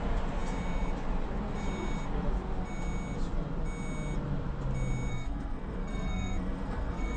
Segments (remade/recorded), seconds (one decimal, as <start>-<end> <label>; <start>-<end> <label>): 0.0-5.1 recorded; 5.1-7.2 remade